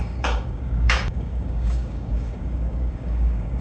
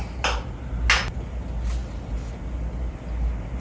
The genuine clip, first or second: second